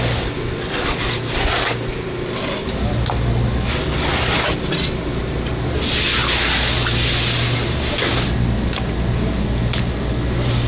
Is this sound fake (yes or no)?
no